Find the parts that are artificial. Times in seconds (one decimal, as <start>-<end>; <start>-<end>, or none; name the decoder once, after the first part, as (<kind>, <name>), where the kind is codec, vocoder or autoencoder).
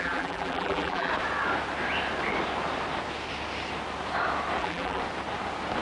0.0-1.1 (vocoder, BigVGAN v2); 4.6-5.0